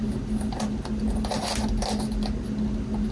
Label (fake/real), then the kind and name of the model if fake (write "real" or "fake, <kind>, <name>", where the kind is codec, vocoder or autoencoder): real